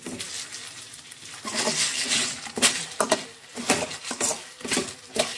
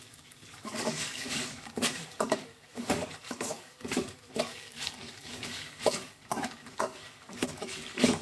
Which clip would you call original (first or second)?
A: first